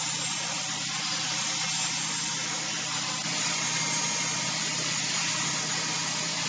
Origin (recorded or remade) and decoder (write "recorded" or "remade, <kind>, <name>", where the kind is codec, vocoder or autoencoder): recorded